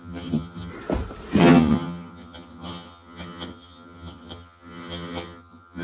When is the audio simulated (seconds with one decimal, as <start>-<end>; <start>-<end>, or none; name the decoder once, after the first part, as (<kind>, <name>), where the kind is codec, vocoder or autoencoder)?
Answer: 0.0-0.7 (vocoder, HiFi-GAN); 1.4-5.8